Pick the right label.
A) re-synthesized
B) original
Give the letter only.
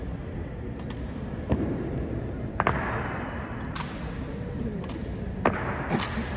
B